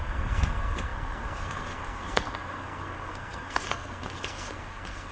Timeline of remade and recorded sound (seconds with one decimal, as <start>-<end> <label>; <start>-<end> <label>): 0.0-5.1 remade